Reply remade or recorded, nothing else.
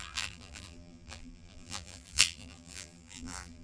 remade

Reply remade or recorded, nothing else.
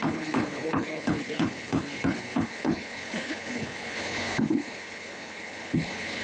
remade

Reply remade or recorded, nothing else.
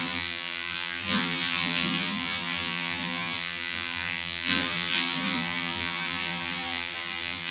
remade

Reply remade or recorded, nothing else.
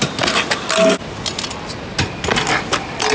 recorded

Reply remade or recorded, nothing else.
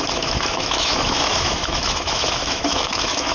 remade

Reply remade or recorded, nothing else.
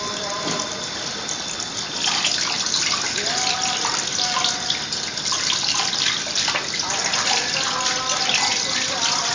recorded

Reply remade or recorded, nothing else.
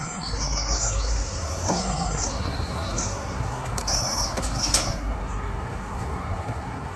remade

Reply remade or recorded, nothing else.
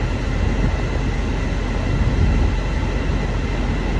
recorded